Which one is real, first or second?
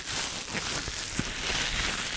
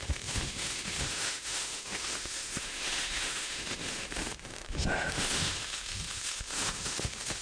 first